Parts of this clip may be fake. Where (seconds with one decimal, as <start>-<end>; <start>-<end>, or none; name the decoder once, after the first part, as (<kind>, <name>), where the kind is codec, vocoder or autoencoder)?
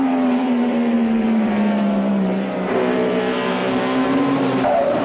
0.0-3.6 (vocoder, BigVGAN v2); 4.3-5.0